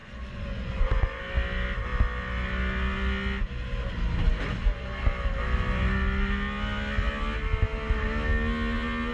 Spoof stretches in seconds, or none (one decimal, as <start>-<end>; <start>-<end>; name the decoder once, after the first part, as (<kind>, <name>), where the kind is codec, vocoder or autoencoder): 0.0-1.2 (vocoder, Vocos)